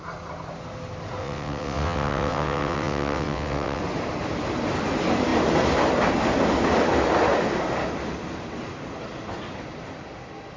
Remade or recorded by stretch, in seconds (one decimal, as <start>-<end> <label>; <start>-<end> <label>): 0.0-1.2 recorded; 1.2-3.8 remade; 3.8-10.6 recorded